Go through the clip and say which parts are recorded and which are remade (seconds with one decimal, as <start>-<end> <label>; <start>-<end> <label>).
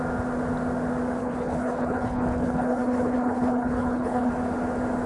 0.0-1.2 recorded; 1.2-4.3 remade; 4.3-5.1 recorded